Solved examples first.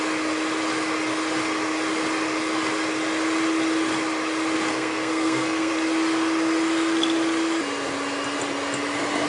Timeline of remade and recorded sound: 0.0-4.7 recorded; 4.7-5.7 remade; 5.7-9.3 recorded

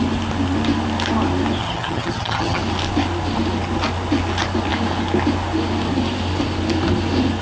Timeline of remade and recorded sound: 0.0-1.6 recorded; 1.6-2.6 remade; 2.6-7.4 recorded

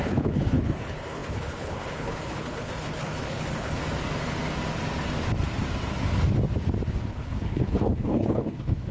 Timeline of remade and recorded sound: 0.0-3.8 remade; 3.8-7.1 recorded; 7.1-8.9 remade

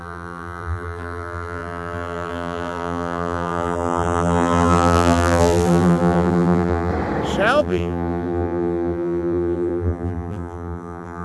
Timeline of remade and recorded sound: 0.0-6.9 remade; 6.9-7.6 recorded; 7.6-11.2 remade

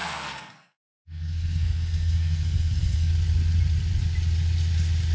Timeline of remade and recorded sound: 0.0-3.1 remade; 3.1-5.1 recorded

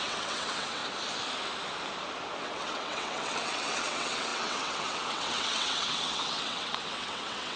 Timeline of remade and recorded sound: 0.0-0.8 remade; 0.8-2.4 recorded; 2.4-7.6 remade

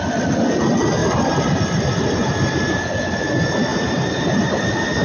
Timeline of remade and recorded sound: 0.0-1.0 recorded; 1.0-2.8 remade; 2.8-3.7 recorded; 3.7-4.6 remade; 4.6-5.0 recorded